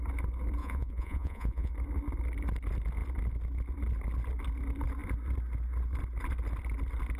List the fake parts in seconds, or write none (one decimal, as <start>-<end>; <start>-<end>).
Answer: 0.6-1.7